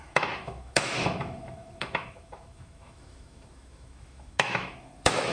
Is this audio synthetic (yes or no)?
yes